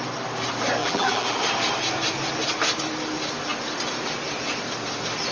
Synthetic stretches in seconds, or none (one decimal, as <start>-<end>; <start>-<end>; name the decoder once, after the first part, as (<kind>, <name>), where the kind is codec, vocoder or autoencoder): 0.8-1.4 (vocoder, BigVGAN v2)